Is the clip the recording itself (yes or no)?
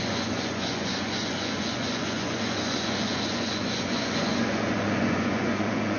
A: no